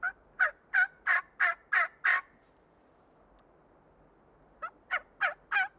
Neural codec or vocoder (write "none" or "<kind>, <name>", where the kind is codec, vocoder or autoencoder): none